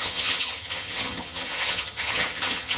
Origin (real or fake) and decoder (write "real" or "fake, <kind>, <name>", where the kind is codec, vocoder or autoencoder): fake, vocoder, HiFi-GAN